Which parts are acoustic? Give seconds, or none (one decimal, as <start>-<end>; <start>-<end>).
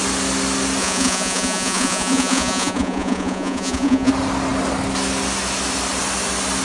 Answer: 0.0-0.8; 4.1-6.6